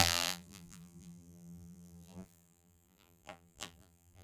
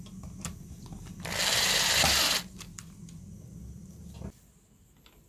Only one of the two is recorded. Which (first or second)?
second